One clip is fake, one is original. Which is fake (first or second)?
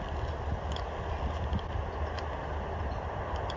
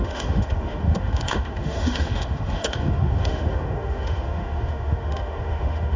second